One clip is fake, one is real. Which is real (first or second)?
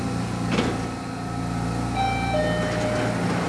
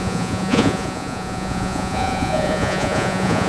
first